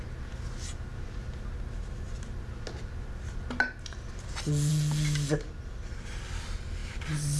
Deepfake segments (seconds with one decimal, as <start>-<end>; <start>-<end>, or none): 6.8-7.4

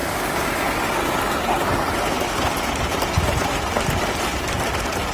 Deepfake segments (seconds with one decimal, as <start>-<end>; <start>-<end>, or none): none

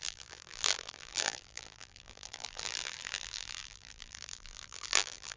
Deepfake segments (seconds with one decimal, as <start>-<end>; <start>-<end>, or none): 0.0-5.4

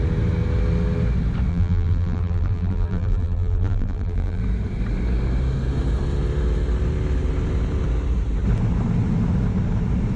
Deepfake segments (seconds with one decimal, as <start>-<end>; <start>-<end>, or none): 1.5-4.4

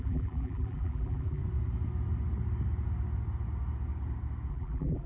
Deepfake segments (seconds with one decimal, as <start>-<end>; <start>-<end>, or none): 0.0-1.4; 4.5-5.1